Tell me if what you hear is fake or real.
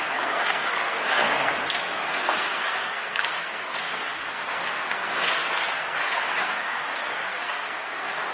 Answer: fake